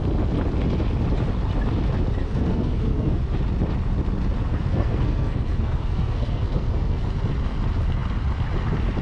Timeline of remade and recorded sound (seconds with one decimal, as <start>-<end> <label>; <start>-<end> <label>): 0.0-2.2 recorded; 2.2-3.2 remade; 3.2-4.5 recorded; 4.5-7.1 remade; 7.1-9.0 recorded